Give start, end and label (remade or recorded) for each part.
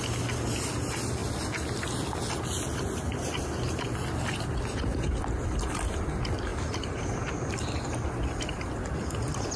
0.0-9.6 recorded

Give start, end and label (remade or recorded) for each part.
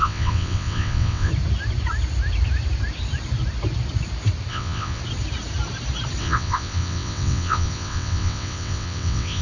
0.0-1.3 remade; 1.3-4.5 recorded; 4.5-5.0 remade; 5.0-6.2 recorded; 6.2-9.4 remade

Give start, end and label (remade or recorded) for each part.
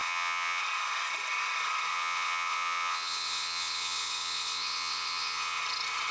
0.0-0.6 remade; 0.6-1.9 recorded; 1.9-5.6 remade; 5.6-6.1 recorded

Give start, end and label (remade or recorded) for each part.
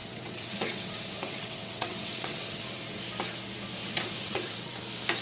0.0-3.0 remade; 3.0-3.8 recorded; 3.8-4.8 remade; 4.8-5.2 recorded